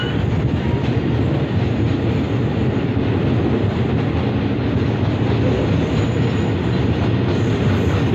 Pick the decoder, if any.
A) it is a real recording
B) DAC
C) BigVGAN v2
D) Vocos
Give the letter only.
A